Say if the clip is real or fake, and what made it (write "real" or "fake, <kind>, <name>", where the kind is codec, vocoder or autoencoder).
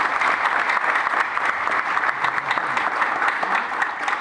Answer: real